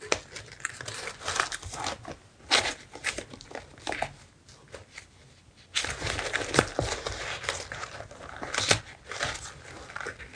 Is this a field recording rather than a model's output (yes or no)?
yes